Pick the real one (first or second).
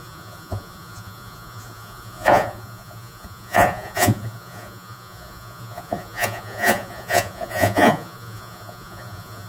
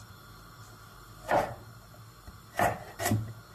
second